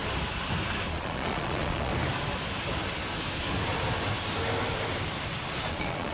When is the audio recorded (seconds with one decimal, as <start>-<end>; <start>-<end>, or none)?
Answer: 0.0-0.9; 1.9-5.6